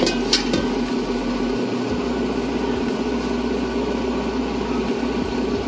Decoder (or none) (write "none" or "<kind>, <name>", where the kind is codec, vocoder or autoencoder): none